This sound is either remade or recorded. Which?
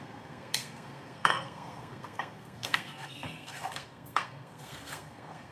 remade